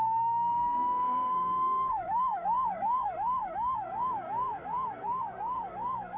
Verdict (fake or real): fake